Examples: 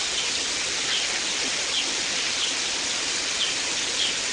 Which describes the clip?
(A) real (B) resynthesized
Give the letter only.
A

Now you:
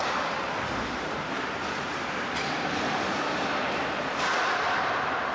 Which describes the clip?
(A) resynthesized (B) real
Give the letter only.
A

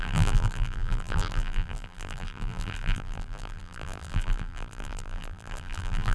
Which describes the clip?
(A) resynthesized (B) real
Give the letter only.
A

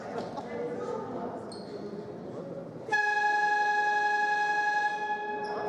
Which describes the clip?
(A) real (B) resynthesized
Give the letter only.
A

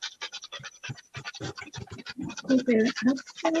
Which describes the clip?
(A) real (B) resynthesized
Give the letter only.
B